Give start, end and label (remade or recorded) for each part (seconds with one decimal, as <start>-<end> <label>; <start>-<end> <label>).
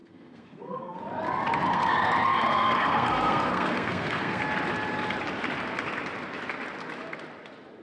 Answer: 0.0-1.0 remade; 1.0-1.7 recorded; 1.7-4.4 remade; 4.4-7.8 recorded